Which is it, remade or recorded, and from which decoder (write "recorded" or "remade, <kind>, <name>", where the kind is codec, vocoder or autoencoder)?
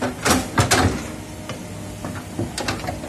recorded